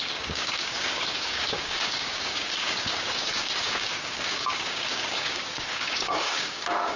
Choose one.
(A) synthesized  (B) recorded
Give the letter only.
A